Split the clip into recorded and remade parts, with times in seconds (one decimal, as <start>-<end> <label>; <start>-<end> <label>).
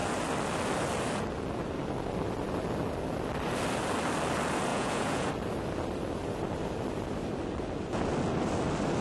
0.0-4.7 recorded; 4.7-5.3 remade; 5.3-9.0 recorded